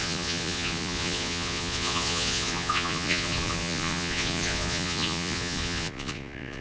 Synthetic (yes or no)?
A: yes